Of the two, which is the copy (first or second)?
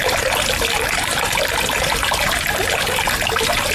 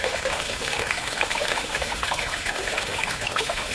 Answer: second